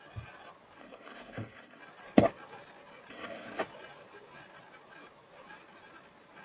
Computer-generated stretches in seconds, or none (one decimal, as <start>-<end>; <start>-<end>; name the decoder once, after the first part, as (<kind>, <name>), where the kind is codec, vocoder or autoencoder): 0.8-1.8 (codec, SNAC); 3.1-3.6